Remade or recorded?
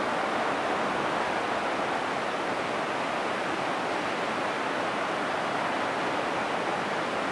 recorded